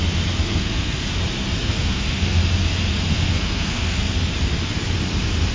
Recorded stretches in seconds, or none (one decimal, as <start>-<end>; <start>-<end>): 0.0-0.4; 1.1-1.6; 2.4-3.1; 4.0-5.5